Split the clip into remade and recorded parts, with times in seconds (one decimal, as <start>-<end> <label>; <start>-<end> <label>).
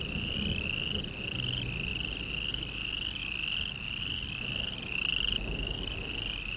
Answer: 0.0-6.6 recorded